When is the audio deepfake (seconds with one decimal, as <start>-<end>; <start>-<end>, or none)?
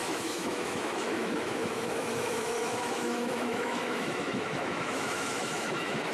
0.0-6.1